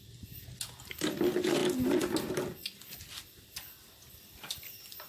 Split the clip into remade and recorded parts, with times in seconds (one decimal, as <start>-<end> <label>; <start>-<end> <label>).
0.0-5.1 recorded